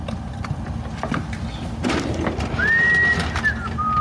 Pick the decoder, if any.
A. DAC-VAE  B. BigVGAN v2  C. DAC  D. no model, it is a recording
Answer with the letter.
D